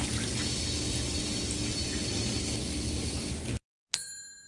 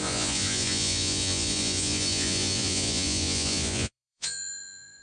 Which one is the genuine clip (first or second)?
first